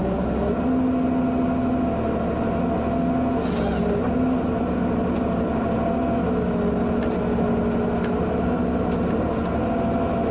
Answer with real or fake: real